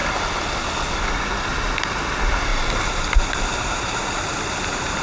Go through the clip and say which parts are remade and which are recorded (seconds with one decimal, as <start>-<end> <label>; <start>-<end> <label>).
0.0-2.5 recorded; 2.5-3.1 remade; 3.1-5.0 recorded

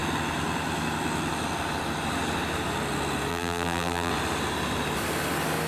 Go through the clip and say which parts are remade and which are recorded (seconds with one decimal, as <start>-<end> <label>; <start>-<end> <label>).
0.0-3.3 recorded; 3.3-4.1 remade; 4.1-5.7 recorded

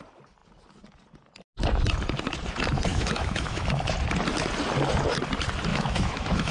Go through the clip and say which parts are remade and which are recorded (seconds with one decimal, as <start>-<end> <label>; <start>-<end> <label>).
0.0-2.9 recorded; 2.9-3.7 remade; 3.7-5.7 recorded; 5.7-6.5 remade

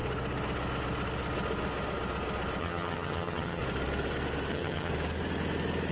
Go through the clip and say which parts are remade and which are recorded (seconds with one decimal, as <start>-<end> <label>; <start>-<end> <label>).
0.0-2.6 recorded; 2.6-3.6 remade; 3.6-4.5 recorded; 4.5-4.9 remade; 4.9-5.9 recorded

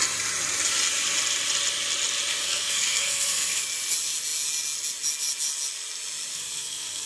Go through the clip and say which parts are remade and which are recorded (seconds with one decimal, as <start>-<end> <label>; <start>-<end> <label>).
0.0-2.3 recorded; 2.3-3.6 remade; 3.6-6.3 recorded; 6.3-7.1 remade

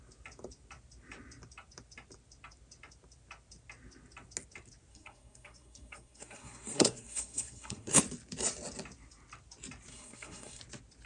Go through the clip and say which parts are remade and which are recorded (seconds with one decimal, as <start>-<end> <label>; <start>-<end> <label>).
0.0-4.9 recorded; 4.9-8.0 remade; 8.0-9.9 recorded; 9.9-10.6 remade; 10.6-11.1 recorded